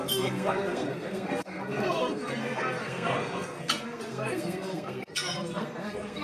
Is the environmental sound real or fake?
fake